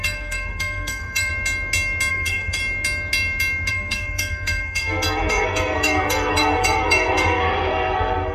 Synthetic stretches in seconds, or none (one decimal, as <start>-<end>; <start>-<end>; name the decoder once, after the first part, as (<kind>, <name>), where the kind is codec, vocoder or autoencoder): 0.0-1.3 (codec, SNAC); 2.1-2.6; 3.7-8.3